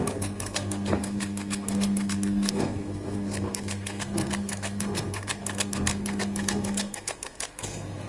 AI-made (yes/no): yes